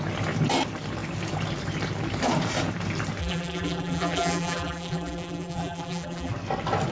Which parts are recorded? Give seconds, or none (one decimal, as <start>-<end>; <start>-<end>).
0.0-3.2; 6.3-6.9